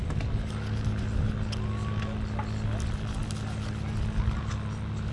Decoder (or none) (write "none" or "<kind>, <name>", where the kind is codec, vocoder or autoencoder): none